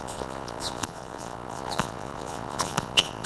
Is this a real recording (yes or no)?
no